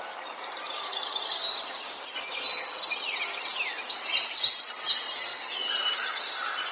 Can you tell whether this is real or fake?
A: real